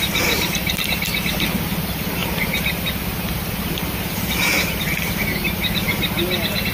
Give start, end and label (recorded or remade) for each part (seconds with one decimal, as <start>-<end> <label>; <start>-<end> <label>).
0.0-6.7 recorded